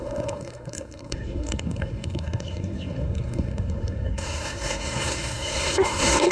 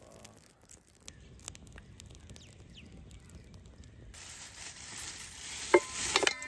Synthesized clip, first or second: first